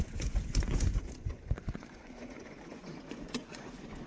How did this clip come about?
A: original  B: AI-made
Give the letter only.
B